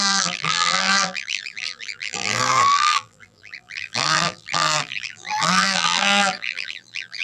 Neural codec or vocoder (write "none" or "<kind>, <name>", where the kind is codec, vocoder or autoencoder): vocoder, BigVGAN v2